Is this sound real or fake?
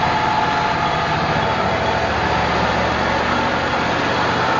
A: real